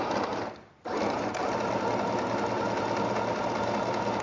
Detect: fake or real real